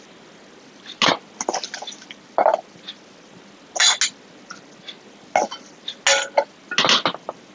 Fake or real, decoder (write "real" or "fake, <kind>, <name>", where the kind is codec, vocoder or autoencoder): real